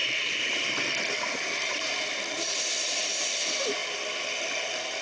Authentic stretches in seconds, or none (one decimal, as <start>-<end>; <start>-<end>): 3.0-3.8; 4.3-5.0